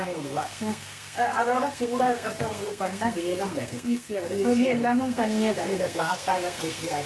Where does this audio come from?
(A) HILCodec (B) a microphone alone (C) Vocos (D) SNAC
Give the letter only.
D